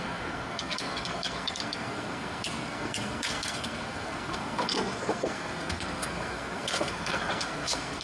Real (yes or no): no